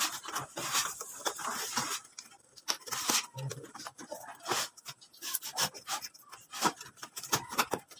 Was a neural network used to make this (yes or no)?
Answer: no